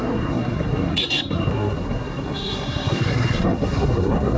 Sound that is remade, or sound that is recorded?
remade